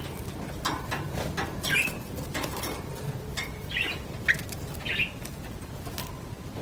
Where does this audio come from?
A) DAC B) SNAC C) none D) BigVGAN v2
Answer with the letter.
C